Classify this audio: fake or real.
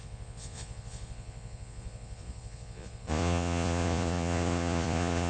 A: fake